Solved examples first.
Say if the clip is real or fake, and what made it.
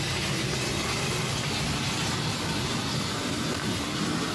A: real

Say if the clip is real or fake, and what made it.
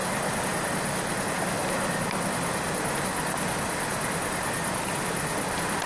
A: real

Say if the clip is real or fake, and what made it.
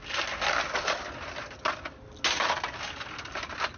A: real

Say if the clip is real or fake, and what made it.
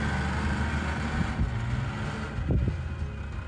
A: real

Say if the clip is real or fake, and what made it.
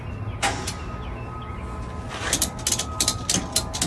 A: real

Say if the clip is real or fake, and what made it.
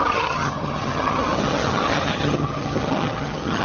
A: fake, vocoder, HiFi-GAN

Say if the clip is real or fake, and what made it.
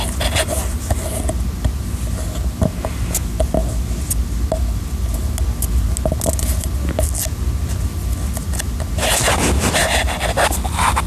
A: real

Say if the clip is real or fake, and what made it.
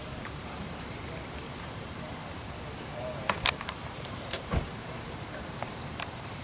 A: fake, vocoder, BigVGAN v2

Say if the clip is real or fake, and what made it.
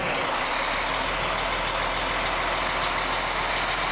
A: real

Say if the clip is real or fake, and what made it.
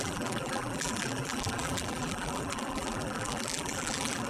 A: fake, vocoder, BigVGAN v2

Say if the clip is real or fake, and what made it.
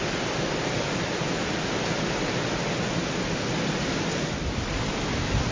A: real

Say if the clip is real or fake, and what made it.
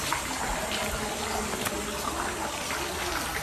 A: real